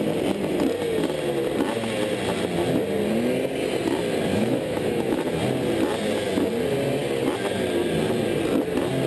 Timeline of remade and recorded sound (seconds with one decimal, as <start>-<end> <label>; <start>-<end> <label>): 0.0-4.3 recorded; 4.3-5.2 remade; 5.2-9.1 recorded